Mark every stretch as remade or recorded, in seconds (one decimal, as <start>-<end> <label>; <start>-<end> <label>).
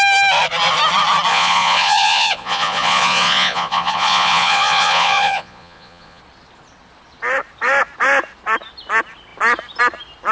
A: 0.0-1.3 recorded; 1.3-6.2 remade; 6.2-10.3 recorded